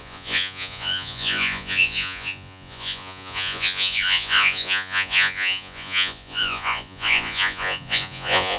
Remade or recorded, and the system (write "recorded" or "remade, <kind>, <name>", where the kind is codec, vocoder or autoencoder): remade, vocoder, Vocos